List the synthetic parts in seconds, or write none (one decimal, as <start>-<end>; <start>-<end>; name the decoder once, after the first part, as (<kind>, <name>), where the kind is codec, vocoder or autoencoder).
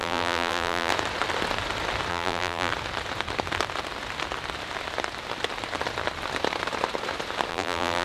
0.0-0.9 (vocoder, BigVGAN v2); 2.1-2.7; 7.5-8.0